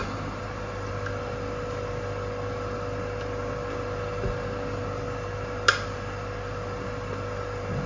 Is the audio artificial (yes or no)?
no